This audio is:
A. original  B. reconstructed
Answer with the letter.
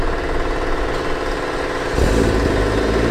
A